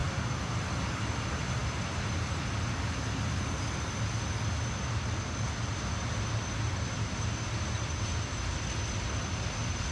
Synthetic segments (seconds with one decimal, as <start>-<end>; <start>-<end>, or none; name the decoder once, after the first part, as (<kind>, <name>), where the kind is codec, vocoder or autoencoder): none